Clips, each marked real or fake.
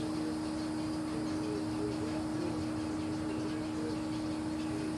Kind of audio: real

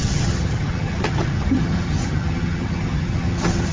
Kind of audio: fake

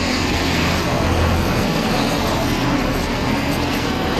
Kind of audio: fake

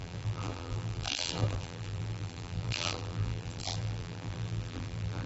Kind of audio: fake